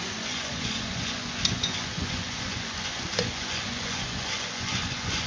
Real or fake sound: fake